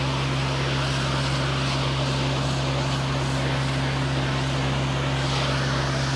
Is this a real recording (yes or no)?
yes